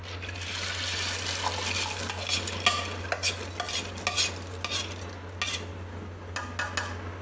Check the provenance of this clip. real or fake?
real